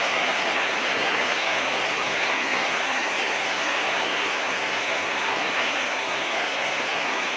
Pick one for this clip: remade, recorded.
remade